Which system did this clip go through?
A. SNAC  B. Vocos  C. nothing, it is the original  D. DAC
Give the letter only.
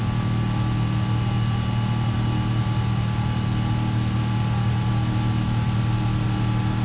C